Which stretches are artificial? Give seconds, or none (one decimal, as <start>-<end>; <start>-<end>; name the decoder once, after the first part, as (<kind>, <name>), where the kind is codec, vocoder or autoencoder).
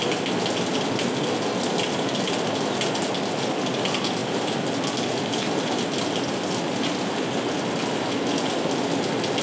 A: none